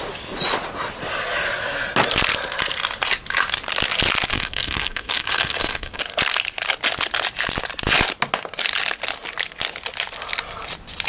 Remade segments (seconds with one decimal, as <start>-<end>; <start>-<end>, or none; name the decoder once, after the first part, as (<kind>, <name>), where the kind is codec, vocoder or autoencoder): 4.3-6.0 (codec, SNAC)